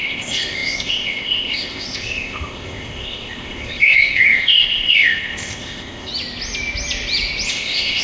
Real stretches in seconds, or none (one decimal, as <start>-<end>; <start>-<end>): 6.1-7.5